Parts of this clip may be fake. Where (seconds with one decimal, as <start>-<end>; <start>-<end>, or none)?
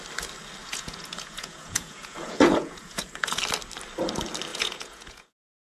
0.6-3.4; 4.5-5.6